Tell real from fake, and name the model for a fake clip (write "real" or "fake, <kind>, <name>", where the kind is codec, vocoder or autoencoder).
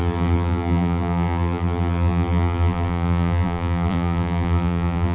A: fake, vocoder, BigVGAN v2